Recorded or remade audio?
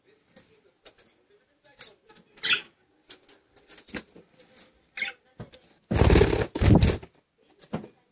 recorded